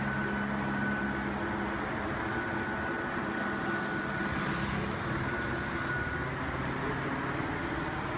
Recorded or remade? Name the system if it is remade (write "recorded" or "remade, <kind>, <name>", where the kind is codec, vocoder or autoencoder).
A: recorded